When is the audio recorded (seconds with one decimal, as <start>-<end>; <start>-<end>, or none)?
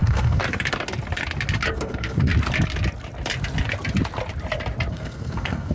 0.4-1.7; 2.3-4.9